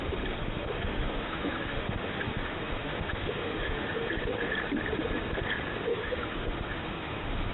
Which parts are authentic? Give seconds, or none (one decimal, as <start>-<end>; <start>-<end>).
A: 0.0-0.4; 4.1-5.9

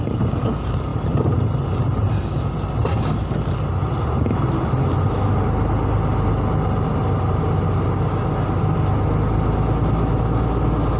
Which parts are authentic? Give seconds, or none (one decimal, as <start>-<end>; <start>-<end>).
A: 0.0-11.0

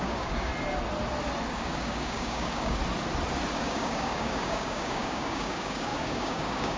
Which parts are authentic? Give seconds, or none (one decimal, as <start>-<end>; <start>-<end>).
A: 0.5-1.5; 2.8-3.5

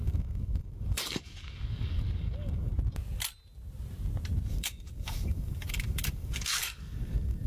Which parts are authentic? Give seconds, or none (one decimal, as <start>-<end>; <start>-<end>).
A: 2.7-4.5